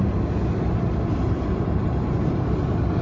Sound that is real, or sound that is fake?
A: real